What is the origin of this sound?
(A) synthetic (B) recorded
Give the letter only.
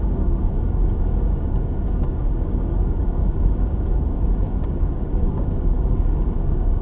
A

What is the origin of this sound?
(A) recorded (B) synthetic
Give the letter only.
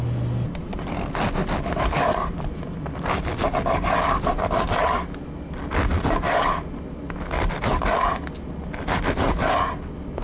A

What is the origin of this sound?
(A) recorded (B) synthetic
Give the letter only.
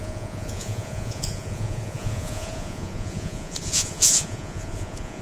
B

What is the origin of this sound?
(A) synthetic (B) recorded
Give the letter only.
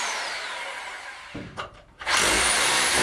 A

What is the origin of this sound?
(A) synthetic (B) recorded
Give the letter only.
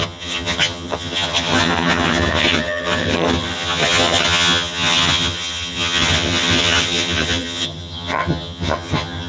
A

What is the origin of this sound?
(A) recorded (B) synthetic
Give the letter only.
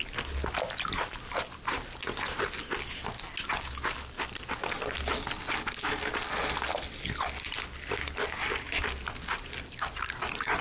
A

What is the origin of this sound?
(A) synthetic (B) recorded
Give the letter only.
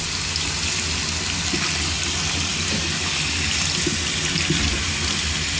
B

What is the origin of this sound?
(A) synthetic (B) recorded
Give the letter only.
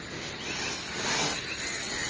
B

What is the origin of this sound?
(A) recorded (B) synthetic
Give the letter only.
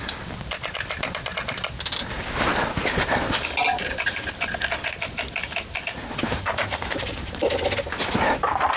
A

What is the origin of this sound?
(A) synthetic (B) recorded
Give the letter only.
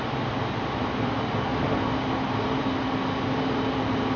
B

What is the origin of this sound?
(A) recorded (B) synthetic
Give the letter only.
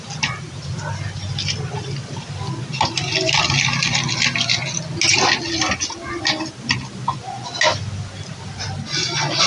A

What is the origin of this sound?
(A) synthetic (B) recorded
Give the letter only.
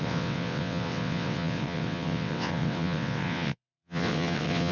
A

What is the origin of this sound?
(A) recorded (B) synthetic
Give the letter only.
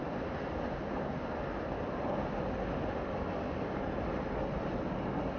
A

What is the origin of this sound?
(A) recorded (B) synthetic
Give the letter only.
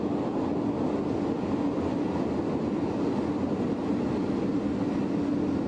A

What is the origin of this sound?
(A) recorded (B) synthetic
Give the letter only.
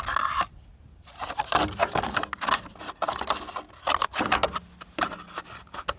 A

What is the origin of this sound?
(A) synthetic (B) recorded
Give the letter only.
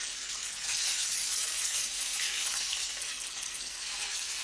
A